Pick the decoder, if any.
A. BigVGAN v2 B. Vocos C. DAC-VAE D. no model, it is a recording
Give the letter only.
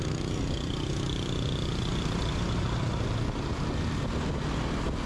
D